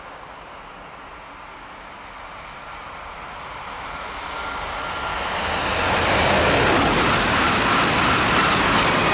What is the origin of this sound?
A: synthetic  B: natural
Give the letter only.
B